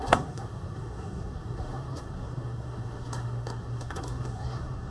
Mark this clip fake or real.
fake